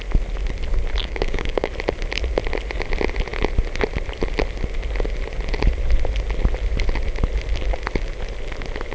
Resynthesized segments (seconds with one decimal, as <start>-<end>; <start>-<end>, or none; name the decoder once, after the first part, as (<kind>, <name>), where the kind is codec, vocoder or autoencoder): 1.0-1.7 (codec, DAC)